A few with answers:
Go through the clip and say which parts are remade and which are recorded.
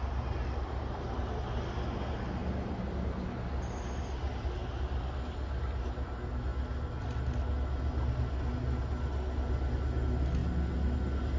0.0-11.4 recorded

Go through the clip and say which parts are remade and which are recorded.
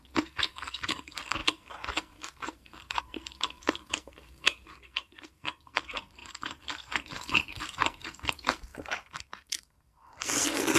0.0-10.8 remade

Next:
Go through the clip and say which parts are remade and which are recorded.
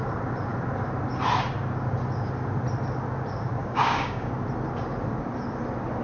0.0-3.6 recorded; 3.6-4.3 remade; 4.3-6.0 recorded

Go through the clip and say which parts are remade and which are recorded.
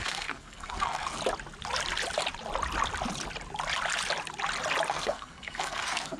0.0-1.2 remade; 1.2-4.9 recorded; 4.9-6.2 remade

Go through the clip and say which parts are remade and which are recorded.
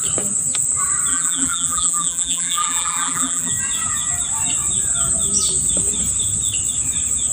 0.0-1.1 recorded; 1.1-3.5 remade; 3.5-7.3 recorded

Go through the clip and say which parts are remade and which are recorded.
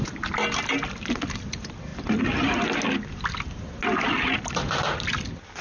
0.0-5.6 recorded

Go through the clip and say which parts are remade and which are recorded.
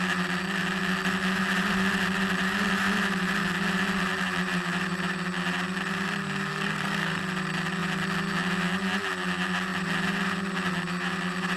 0.0-6.5 recorded; 6.5-7.2 remade; 7.2-11.6 recorded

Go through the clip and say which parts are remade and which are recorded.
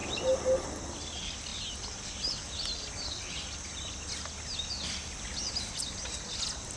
0.0-6.8 recorded